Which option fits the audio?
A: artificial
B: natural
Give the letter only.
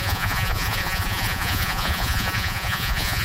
A